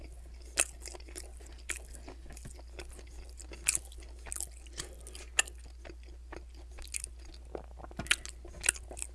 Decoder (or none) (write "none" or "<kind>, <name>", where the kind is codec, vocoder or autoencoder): none